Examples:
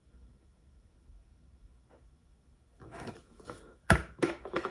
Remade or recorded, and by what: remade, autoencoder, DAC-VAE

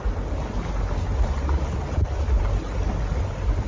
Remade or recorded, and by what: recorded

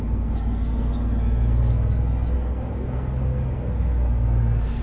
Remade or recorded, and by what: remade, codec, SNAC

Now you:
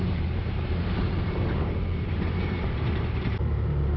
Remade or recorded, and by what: remade, vocoder, BigVGAN v2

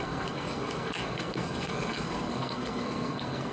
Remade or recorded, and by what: remade, codec, SNAC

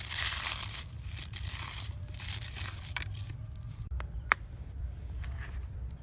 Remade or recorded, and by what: remade, vocoder, BigVGAN v2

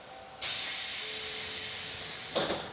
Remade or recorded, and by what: recorded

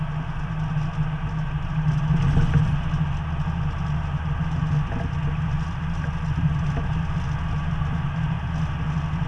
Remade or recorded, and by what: recorded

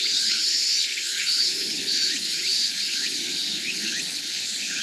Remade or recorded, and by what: remade, codec, HILCodec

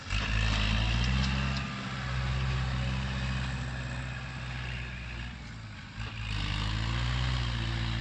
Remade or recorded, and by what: recorded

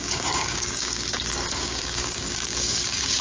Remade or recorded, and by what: remade, codec, DAC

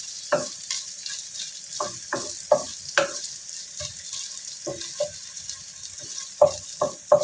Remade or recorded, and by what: recorded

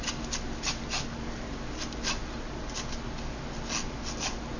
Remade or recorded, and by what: recorded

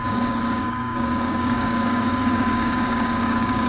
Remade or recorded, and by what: remade, codec, DAC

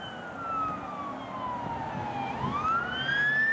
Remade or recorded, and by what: recorded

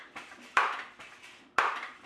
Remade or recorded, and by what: recorded